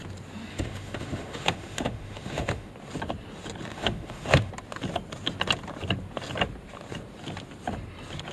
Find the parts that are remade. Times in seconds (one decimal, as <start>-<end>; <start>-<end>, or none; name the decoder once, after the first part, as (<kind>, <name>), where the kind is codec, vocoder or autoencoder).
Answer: 0.5-2.7 (autoencoder, DAC-VAE); 3.7-4.5